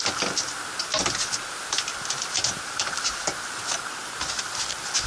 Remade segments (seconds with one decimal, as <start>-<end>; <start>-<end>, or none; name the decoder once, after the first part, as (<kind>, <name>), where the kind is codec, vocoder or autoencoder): none